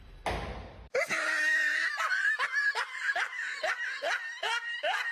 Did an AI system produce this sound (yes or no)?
no